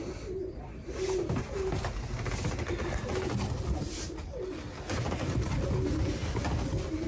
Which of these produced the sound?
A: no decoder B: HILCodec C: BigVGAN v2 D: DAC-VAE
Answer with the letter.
A